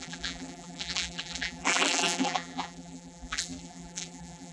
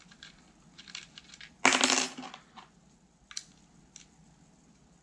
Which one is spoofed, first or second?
first